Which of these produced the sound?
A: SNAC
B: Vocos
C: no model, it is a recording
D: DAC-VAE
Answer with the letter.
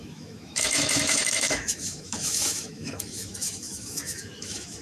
D